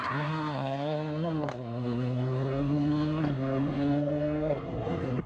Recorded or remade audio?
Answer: remade